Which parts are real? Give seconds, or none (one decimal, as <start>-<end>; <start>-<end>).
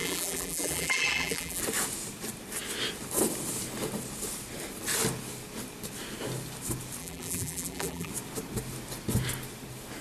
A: 1.6-7.0; 8.1-10.0